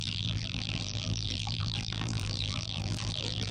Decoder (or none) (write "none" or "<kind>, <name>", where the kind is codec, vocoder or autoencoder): vocoder, BigVGAN v2